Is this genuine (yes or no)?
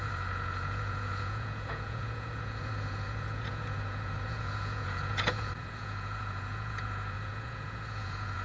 no